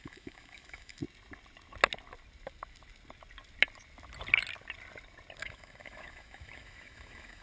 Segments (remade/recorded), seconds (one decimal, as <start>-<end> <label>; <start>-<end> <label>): 0.0-1.0 remade; 1.0-5.4 recorded; 5.4-7.4 remade